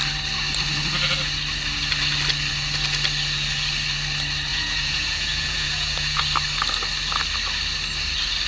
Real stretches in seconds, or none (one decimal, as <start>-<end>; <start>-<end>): 0.0-4.5; 6.2-8.5